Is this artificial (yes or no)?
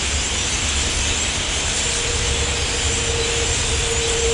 no